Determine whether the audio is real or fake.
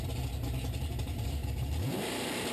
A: fake